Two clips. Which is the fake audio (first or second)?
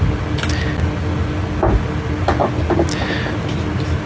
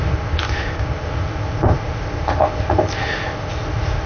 second